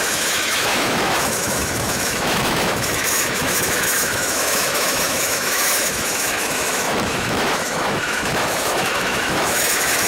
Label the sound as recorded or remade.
remade